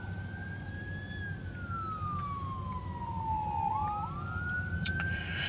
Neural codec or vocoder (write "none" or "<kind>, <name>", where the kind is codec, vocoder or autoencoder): none